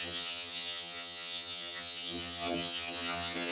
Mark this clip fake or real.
fake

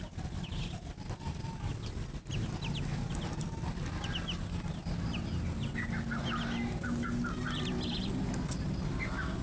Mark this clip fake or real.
real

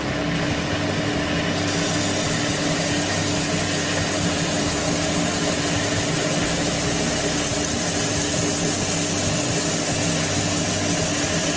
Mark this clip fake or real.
real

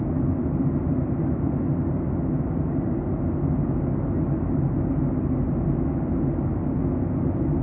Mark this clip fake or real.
real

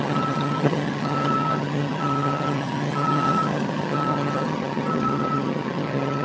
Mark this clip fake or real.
fake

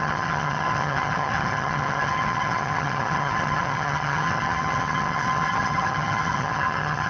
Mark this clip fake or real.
fake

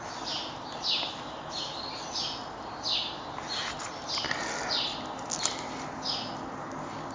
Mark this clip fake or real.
real